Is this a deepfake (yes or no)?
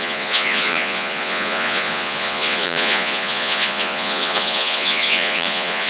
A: yes